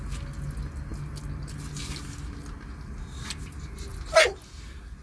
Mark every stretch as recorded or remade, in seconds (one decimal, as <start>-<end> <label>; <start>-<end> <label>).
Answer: 0.0-5.0 recorded